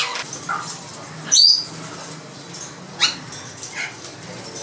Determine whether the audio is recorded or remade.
recorded